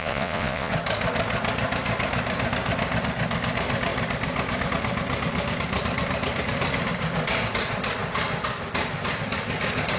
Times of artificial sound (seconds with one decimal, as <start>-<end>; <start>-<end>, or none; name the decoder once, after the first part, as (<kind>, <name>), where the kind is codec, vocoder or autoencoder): 0.0-0.7 (vocoder, Vocos)